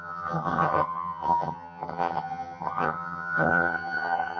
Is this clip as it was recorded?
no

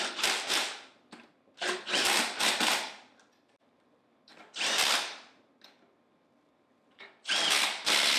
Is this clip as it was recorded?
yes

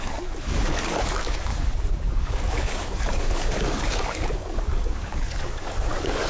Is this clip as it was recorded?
no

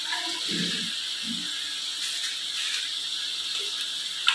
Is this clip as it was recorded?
yes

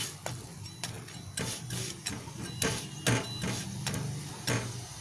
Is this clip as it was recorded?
yes